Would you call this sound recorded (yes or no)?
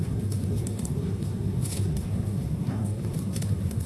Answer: no